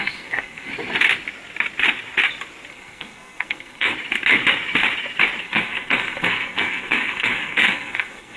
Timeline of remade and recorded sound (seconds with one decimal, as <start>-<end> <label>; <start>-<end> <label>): 0.0-0.7 remade; 0.7-2.7 recorded; 2.7-3.9 remade; 3.9-5.4 recorded; 5.4-8.4 remade